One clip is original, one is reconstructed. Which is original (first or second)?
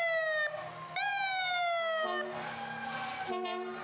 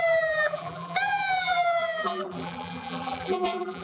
first